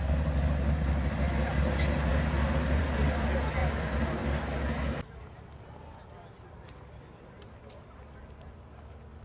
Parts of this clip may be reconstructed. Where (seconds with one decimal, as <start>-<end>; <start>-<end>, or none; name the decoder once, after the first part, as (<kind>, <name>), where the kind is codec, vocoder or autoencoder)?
none